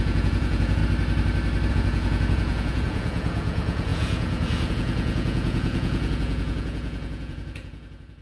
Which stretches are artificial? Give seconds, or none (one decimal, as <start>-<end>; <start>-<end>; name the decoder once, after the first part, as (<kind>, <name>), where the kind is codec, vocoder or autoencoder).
0.0-0.8 (vocoder, Vocos); 1.7-8.2